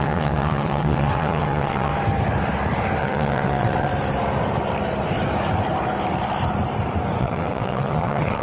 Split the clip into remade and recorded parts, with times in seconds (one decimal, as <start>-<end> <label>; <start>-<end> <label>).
0.0-1.9 remade; 1.9-3.0 recorded; 3.0-3.9 remade; 3.9-7.2 recorded; 7.2-8.4 remade

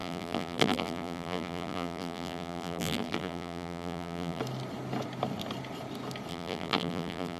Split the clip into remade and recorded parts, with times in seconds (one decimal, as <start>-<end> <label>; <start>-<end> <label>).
0.0-4.4 remade; 4.4-6.3 recorded; 6.3-7.4 remade

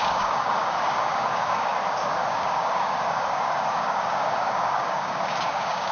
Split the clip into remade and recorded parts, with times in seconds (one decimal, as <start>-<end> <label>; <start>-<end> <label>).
0.0-5.9 remade

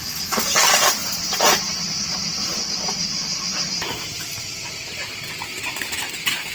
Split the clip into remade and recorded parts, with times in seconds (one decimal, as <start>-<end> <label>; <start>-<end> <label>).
0.0-6.5 recorded

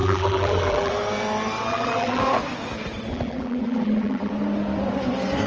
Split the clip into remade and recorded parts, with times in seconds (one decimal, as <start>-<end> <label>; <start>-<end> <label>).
0.0-0.9 remade; 0.9-1.7 recorded; 1.7-2.2 remade; 2.2-3.1 recorded; 3.1-4.3 remade; 4.3-5.5 recorded